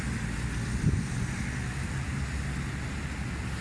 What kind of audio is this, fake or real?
real